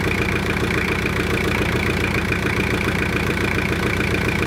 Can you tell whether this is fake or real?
fake